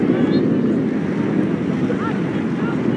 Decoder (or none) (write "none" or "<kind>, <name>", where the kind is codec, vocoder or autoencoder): none